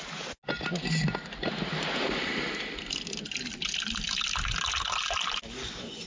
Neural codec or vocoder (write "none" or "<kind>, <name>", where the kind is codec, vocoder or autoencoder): none